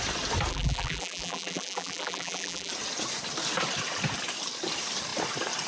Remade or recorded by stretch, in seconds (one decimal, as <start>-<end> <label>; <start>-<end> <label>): 0.0-0.5 recorded; 0.5-2.7 remade; 2.7-5.7 recorded